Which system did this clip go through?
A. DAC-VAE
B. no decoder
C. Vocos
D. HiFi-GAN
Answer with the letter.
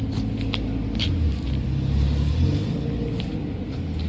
B